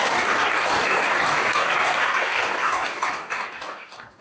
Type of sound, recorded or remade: remade